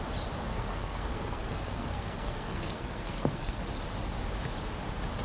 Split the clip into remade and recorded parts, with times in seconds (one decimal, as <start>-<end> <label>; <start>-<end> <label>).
0.0-0.5 recorded; 0.5-3.6 remade; 3.6-5.2 recorded

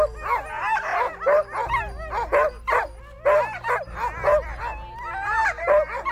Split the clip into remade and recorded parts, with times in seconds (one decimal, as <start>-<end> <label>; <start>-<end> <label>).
0.0-6.1 recorded

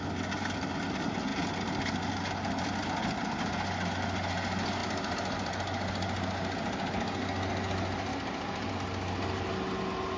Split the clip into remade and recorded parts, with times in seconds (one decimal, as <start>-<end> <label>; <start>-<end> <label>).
0.0-10.2 recorded

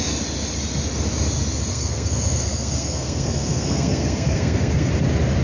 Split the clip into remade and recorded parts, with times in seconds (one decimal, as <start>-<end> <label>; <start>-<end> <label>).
0.0-1.7 recorded; 1.7-4.9 remade; 4.9-5.4 recorded

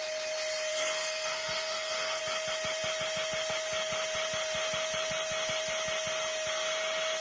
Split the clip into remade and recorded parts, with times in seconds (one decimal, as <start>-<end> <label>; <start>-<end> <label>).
0.0-0.7 recorded; 0.7-2.2 remade; 2.2-7.2 recorded

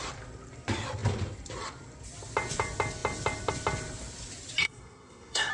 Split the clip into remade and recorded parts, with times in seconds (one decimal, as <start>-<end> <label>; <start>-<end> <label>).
0.0-4.6 recorded; 4.6-5.5 remade